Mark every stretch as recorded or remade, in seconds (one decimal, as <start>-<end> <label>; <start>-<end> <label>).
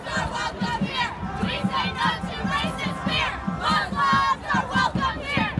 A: 0.0-5.6 recorded